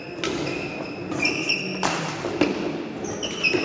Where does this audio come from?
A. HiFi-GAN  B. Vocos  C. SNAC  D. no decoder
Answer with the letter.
D